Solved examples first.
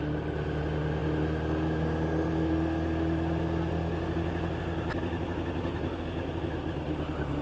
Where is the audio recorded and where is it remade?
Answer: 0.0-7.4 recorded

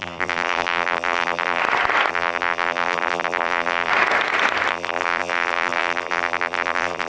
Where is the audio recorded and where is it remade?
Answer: 0.0-1.6 remade; 1.6-2.1 recorded; 2.1-3.9 remade; 3.9-4.7 recorded; 4.7-7.1 remade

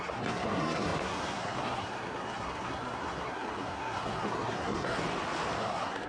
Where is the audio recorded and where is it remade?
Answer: 0.0-5.0 remade; 5.0-5.6 recorded; 5.6-6.1 remade

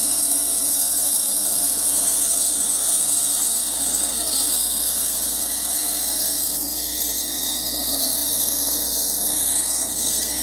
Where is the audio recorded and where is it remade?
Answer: 0.0-10.4 remade

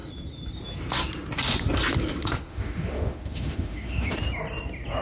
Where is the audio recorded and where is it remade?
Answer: 0.0-2.5 recorded; 2.5-4.1 remade; 4.1-5.0 recorded